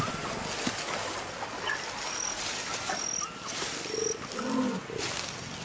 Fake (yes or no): no